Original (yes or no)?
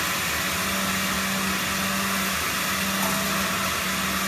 yes